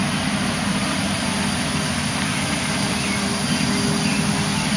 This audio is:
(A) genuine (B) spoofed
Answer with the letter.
A